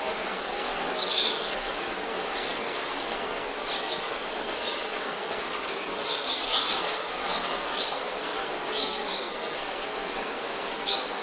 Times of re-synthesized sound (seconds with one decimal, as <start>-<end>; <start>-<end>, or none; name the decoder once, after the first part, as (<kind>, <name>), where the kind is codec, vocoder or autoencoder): 0.0-11.2 (codec, SNAC)